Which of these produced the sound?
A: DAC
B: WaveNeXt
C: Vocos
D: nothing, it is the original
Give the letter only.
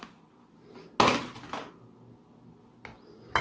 D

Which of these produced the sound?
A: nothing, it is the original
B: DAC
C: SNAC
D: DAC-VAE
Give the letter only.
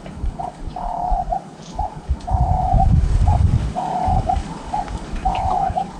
B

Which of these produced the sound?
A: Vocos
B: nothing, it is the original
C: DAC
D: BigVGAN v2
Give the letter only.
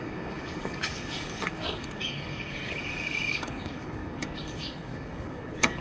C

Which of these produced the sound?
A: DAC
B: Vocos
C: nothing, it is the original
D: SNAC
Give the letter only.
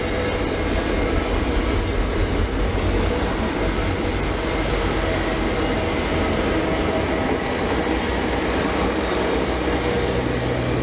C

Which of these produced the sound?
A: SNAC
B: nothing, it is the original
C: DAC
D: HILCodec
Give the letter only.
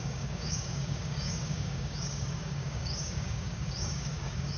C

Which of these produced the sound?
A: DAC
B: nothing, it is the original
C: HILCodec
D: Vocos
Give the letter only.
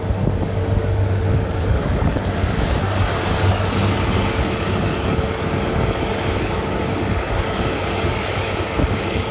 A